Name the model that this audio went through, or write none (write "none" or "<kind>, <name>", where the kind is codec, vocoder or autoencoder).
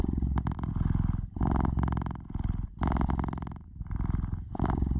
none